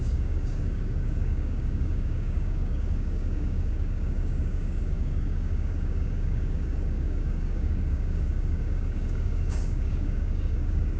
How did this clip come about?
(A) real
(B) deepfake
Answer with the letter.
B